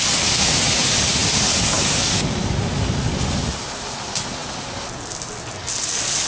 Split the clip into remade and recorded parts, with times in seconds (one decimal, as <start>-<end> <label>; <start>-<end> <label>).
0.0-6.3 recorded